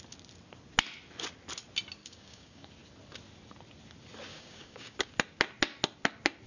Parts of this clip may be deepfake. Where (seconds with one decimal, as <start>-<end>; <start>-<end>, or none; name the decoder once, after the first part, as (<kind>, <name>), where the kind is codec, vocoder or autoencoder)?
2.0-2.7 (codec, DAC); 4.3-5.1